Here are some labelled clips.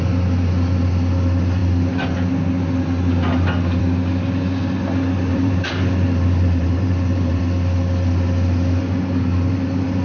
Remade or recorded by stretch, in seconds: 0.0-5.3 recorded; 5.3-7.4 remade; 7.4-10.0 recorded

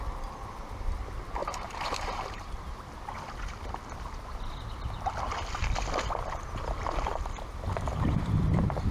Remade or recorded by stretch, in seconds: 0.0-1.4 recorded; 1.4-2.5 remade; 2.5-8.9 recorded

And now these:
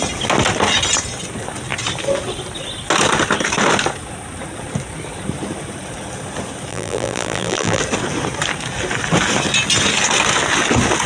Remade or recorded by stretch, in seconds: 0.0-6.7 recorded; 6.7-7.8 remade; 7.8-11.1 recorded

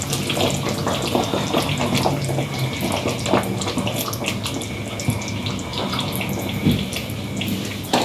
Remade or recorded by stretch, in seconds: 0.0-0.8 recorded; 0.8-1.7 remade; 1.7-8.0 recorded

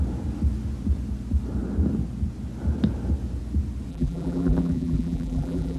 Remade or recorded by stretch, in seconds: 0.0-3.9 recorded; 3.9-5.8 remade

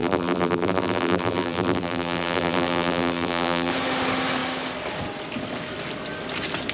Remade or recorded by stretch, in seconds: 0.0-3.7 remade; 3.7-6.7 recorded

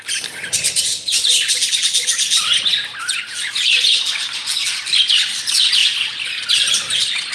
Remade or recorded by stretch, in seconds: 0.0-1.6 remade; 1.6-5.3 recorded; 5.3-5.8 remade; 5.8-6.5 recorded; 6.5-7.3 remade